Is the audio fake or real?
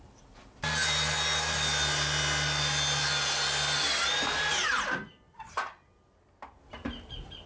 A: real